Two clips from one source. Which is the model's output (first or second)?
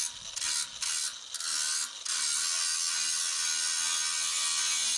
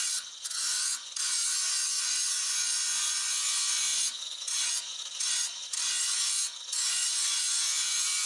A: second